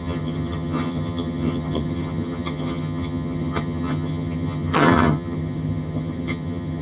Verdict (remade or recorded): remade